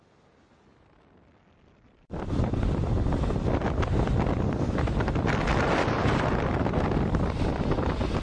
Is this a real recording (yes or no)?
yes